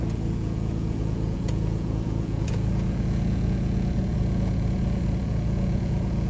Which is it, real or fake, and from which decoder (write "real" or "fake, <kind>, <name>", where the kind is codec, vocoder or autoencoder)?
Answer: fake, vocoder, Vocos